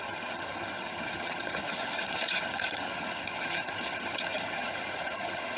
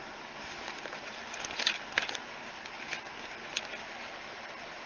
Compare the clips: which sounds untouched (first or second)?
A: second